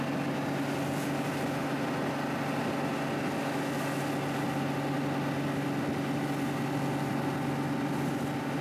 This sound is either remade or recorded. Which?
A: recorded